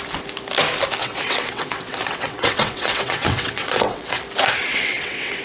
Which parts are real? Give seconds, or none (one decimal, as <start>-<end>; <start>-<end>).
0.0-1.0; 4.2-4.7